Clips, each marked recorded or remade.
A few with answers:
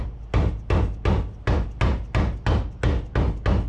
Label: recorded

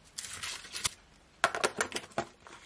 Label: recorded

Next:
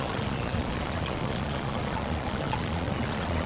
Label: remade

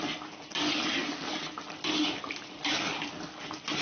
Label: recorded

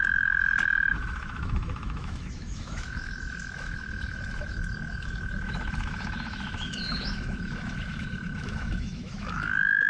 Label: remade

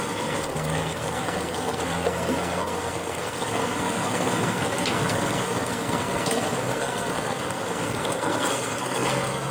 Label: remade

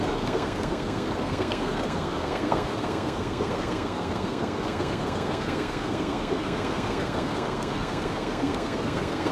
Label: remade